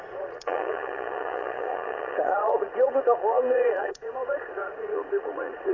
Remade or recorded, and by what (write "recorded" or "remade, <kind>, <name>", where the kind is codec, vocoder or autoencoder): remade, vocoder, Vocos